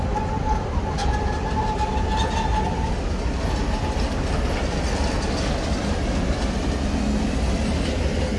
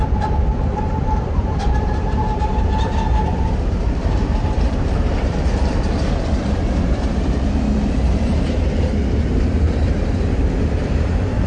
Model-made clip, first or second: second